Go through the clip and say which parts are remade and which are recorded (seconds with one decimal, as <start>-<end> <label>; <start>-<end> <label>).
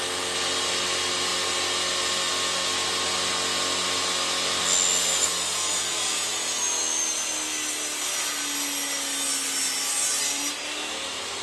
0.0-5.5 recorded; 5.5-6.3 remade; 6.3-11.4 recorded